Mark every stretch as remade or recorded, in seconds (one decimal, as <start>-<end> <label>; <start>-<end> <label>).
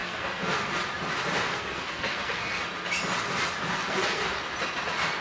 0.0-0.7 remade; 0.7-1.5 recorded; 1.5-2.6 remade; 2.6-3.7 recorded; 3.7-4.2 remade; 4.2-5.2 recorded